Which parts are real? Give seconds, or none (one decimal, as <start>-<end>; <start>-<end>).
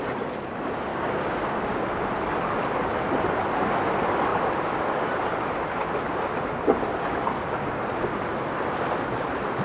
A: 0.0-0.9; 1.9-9.6